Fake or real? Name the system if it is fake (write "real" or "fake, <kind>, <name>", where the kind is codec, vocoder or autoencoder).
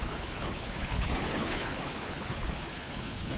fake, codec, HILCodec